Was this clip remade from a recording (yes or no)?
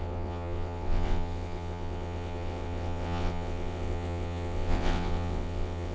yes